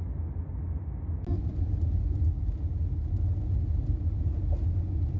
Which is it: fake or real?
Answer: real